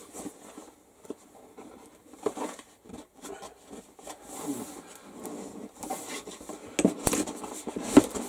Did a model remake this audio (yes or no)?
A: no